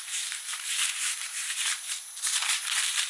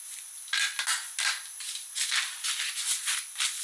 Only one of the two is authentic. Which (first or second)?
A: second